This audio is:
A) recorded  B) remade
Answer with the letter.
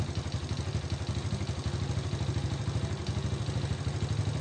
A